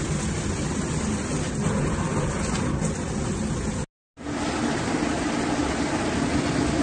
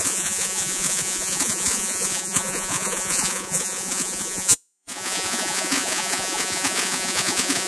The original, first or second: first